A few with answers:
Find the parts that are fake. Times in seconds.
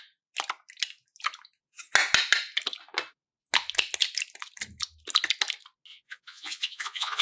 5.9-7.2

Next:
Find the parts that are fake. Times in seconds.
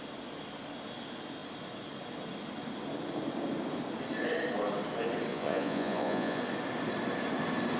5.3-6.4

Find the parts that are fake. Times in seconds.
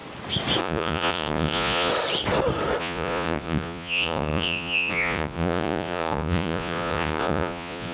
0.6-1.9; 2.8-7.9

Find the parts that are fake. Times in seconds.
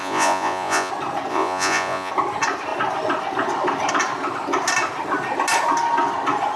0.0-0.9; 1.3-2.1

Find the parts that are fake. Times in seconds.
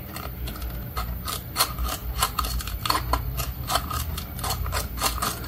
none